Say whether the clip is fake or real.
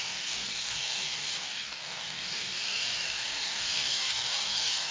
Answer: fake